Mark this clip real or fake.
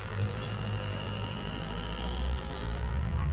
fake